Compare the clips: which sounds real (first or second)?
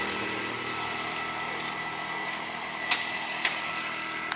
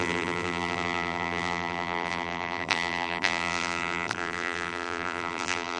first